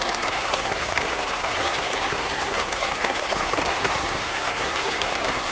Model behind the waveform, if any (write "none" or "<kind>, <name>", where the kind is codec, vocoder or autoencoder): codec, SNAC